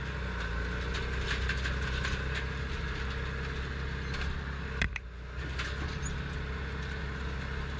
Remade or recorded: recorded